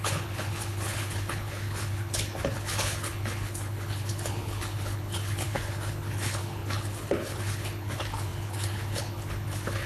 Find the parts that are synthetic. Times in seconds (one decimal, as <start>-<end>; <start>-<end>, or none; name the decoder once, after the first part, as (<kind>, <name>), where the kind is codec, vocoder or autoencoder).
0.0-9.9 (codec, HILCodec)